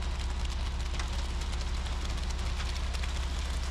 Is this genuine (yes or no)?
yes